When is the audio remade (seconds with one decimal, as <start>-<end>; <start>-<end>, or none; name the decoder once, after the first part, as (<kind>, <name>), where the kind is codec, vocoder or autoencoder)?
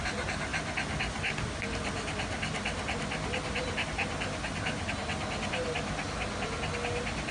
none